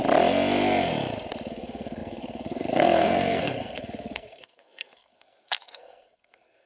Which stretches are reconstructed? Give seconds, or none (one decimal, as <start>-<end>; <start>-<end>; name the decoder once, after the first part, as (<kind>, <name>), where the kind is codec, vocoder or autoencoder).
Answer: 1.5-6.7 (codec, SNAC)